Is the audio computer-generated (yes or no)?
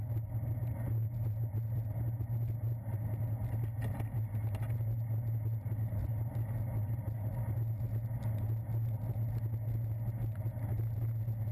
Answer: no